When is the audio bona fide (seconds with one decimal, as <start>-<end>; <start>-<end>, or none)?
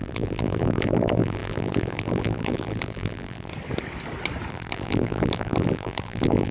3.5-4.5